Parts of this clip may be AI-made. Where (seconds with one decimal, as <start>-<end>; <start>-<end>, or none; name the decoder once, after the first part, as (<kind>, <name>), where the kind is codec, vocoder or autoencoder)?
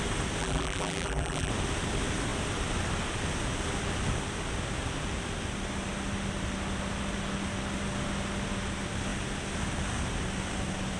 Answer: 0.4-1.5 (vocoder, BigVGAN v2)